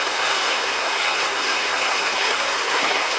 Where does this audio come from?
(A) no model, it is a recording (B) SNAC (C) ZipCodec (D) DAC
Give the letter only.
B